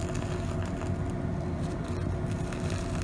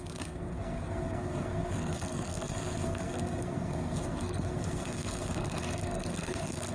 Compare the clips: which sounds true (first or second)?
first